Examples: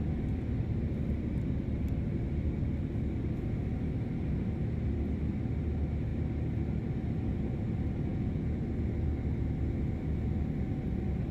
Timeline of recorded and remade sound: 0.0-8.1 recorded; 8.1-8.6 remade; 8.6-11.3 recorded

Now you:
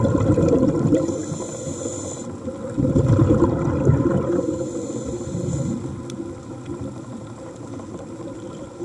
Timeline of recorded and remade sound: 0.0-8.8 recorded

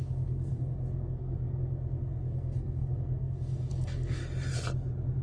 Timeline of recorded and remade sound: 0.0-4.2 remade; 4.2-5.2 recorded

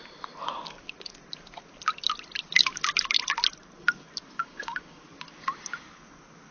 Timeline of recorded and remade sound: 0.0-4.4 recorded; 4.4-5.0 remade; 5.0-6.5 recorded